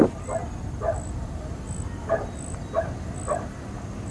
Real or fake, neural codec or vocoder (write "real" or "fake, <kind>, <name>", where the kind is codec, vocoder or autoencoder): real